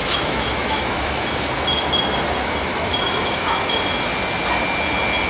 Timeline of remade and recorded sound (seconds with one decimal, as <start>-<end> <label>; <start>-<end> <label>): 0.0-1.2 remade; 1.2-2.7 recorded; 2.7-3.7 remade; 3.7-5.3 recorded